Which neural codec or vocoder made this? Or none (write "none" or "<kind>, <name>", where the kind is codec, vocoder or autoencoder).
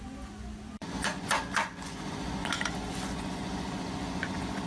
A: vocoder, Vocos